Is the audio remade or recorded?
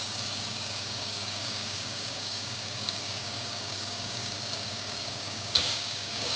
remade